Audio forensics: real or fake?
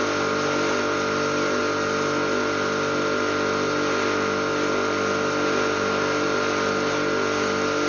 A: real